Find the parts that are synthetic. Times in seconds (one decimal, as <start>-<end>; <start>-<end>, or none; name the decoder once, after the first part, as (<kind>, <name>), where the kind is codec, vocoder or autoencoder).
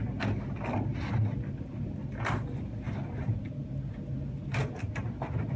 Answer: none